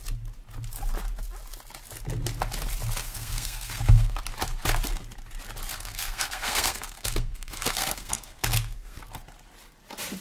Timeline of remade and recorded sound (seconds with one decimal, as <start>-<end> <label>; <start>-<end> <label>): 0.0-3.0 recorded; 3.0-4.2 remade; 4.2-5.7 recorded; 5.7-9.0 remade; 9.0-10.2 recorded